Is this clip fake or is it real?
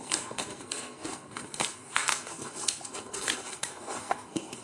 fake